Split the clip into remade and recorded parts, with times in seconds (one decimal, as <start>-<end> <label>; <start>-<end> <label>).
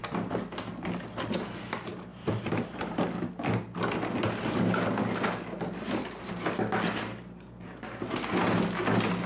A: 0.0-2.1 recorded; 2.1-3.3 remade; 3.3-9.3 recorded